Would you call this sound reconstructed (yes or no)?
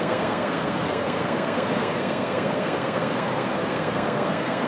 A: yes